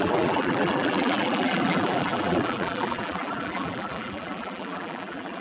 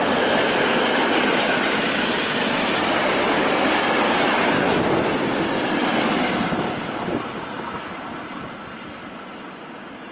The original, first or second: second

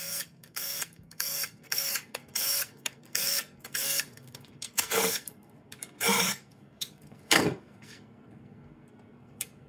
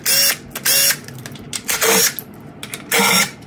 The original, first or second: second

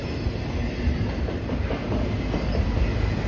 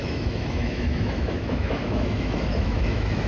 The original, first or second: first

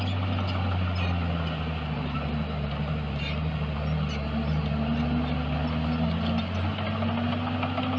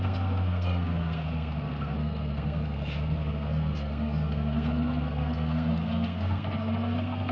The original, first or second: first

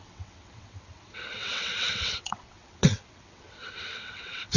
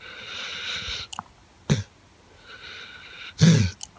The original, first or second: second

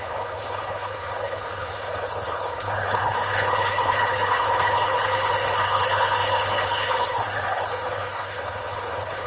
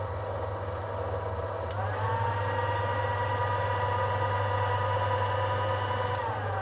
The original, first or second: second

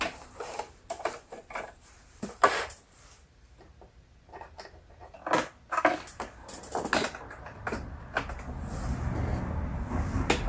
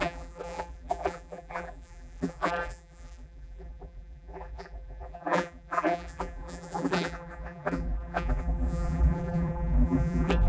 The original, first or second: first